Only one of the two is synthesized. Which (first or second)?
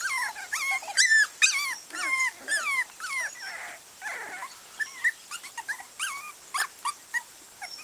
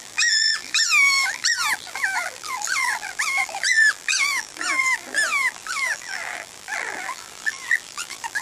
second